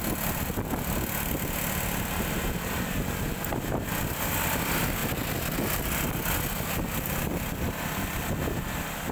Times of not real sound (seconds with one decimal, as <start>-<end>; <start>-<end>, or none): none

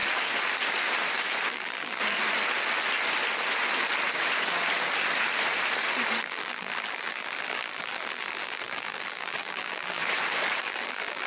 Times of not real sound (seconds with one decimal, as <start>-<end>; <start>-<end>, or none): 1.5-2.0; 6.2-10.0; 10.6-11.3

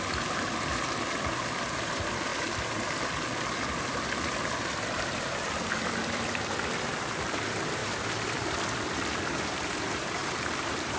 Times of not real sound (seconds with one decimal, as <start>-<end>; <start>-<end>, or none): 0.0-2.3; 3.8-11.0

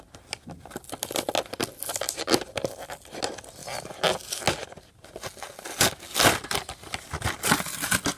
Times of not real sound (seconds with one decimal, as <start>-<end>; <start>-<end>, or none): none

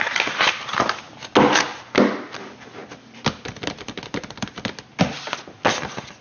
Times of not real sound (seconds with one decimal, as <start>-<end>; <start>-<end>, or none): none

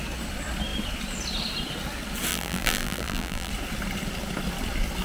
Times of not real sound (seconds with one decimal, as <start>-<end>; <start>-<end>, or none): 2.3-3.5